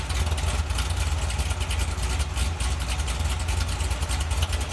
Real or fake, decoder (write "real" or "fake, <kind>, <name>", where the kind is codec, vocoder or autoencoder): real